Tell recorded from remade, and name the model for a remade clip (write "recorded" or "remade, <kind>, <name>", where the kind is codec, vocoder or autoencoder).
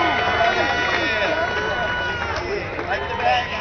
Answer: recorded